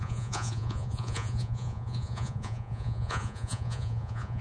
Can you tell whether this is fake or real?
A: fake